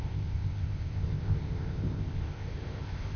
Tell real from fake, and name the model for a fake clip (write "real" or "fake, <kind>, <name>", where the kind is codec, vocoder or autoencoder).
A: fake, codec, ZipCodec